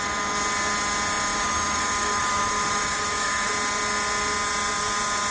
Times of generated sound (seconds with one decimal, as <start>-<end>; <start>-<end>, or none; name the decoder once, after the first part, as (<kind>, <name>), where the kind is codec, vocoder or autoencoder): 1.3-3.5 (autoencoder, DAC-VAE)